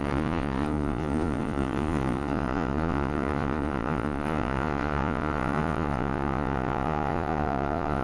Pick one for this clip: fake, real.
fake